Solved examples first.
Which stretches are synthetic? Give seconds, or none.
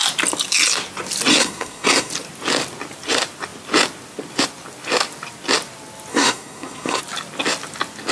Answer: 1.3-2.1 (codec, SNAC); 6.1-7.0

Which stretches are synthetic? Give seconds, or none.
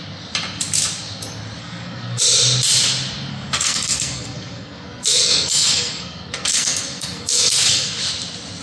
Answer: 1.6-2.2 (codec, SNAC); 3.3-8.0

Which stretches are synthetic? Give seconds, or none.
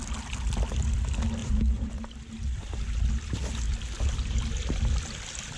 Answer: 1.4-1.9 (vocoder, BigVGAN v2)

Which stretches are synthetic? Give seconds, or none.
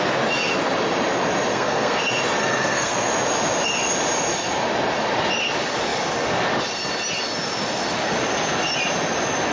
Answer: 1.5-2.0 (codec, SNAC); 2.4-3.1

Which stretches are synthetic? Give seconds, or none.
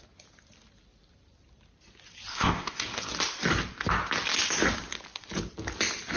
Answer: 2.3-3.1 (codec, ZipCodec)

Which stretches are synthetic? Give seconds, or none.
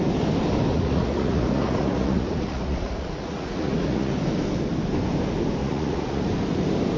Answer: 0.7-4.1 (vocoder, Vocos); 5.6-6.3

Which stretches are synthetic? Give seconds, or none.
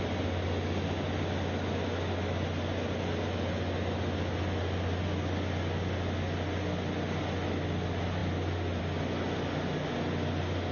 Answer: none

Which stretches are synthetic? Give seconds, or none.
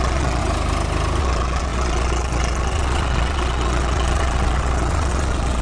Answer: 0.0-0.4 (vocoder, Vocos); 1.2-5.6